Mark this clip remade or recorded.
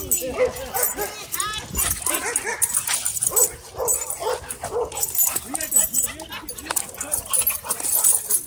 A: recorded